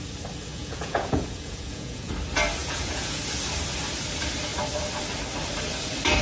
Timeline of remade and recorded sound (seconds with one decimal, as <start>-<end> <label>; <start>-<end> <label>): 0.0-0.5 recorded; 0.5-2.1 remade; 2.1-2.6 recorded; 2.6-3.2 remade; 3.2-6.2 recorded